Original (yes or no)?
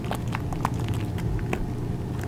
yes